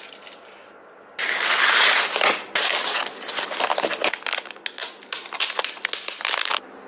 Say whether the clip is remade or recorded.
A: recorded